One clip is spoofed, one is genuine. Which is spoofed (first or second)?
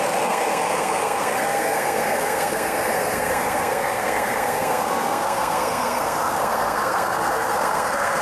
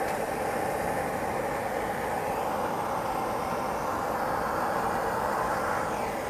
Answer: first